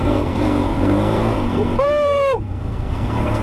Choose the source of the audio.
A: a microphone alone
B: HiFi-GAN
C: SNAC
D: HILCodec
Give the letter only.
C